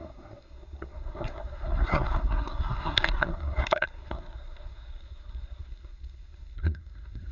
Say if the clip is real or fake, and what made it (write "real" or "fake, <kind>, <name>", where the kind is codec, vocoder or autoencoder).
fake, codec, SNAC